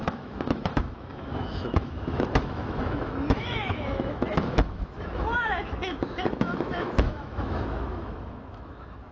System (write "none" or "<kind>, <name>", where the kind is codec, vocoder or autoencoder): autoencoder, DAC-VAE